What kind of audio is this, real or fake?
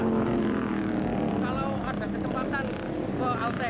real